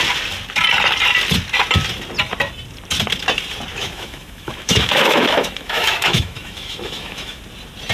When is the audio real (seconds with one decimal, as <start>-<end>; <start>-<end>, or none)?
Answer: 0.0-3.7; 7.4-7.9